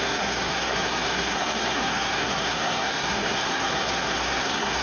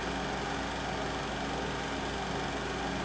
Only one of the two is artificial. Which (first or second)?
first